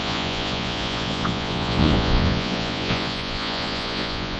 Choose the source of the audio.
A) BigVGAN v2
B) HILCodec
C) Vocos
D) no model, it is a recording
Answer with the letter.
C